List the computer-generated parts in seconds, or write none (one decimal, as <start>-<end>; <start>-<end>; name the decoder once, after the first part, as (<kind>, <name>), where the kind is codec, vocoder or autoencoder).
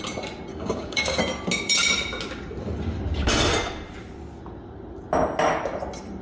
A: 0.5-1.2 (codec, DAC)